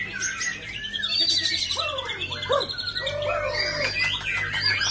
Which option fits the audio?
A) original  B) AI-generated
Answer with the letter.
A